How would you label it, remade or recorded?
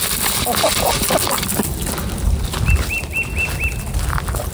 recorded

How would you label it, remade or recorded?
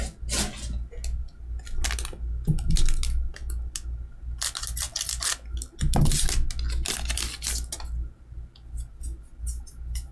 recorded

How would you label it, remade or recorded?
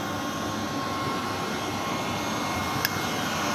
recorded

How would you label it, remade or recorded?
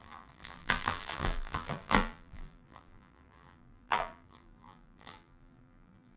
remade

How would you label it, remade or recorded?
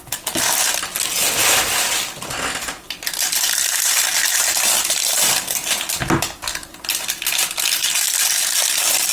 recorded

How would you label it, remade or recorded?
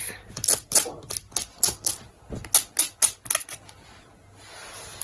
recorded